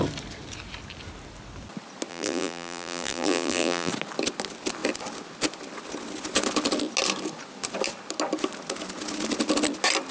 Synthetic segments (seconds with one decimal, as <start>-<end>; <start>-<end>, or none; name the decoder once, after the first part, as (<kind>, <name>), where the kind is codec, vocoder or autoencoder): 2.1-3.9 (vocoder, BigVGAN v2)